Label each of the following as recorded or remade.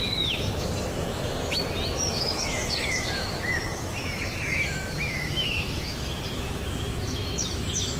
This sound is remade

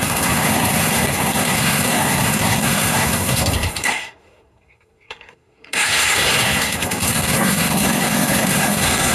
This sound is remade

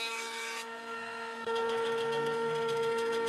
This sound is remade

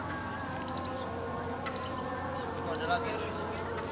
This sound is recorded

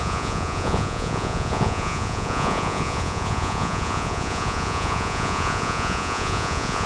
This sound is remade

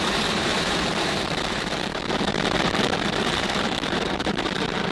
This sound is remade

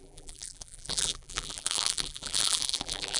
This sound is remade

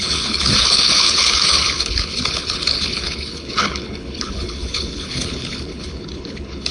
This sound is remade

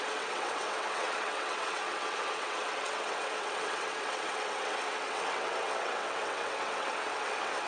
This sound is remade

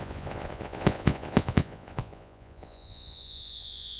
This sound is remade